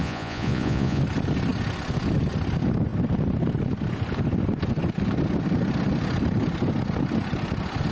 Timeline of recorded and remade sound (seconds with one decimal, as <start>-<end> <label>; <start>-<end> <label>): 0.0-1.0 remade; 1.0-7.9 recorded